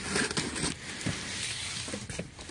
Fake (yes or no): no